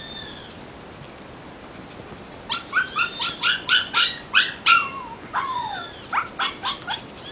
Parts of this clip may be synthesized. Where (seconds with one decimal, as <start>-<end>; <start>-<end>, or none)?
3.4-5.8